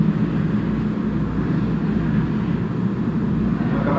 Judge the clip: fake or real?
real